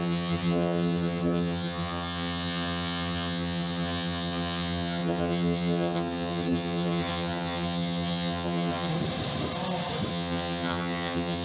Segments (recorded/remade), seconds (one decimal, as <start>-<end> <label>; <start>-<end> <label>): 0.0-8.9 remade; 8.9-10.1 recorded; 10.1-11.4 remade